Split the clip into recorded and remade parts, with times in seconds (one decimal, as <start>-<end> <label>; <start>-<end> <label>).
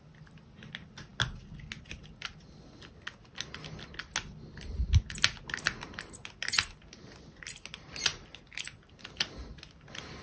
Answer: 0.0-10.2 recorded